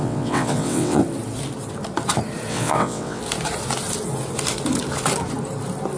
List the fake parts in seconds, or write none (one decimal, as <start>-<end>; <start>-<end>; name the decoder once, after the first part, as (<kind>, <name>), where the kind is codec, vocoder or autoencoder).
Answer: 0.0-1.0 (vocoder, WaveNeXt); 2.5-3.2